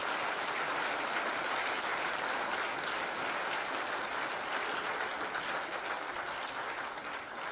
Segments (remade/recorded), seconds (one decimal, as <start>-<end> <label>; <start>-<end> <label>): 0.0-7.5 recorded